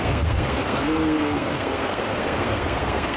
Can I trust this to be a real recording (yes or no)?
no